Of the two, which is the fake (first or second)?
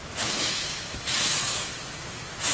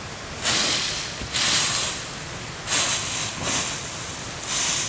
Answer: first